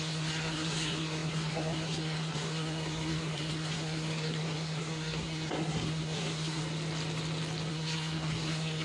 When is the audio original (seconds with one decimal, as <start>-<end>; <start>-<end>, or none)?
6.6-7.7